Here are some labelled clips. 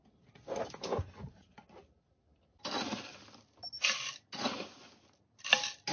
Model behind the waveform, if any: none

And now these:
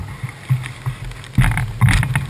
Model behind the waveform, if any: none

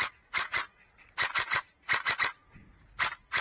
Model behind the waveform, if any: vocoder, Vocos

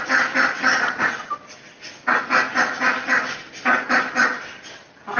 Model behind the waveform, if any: none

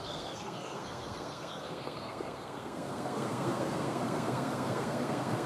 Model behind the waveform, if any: codec, SNAC